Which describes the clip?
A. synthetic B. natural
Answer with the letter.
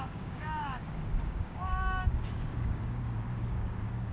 A